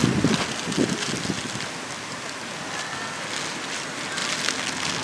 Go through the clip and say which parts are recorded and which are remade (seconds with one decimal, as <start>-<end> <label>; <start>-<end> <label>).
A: 0.0-5.0 recorded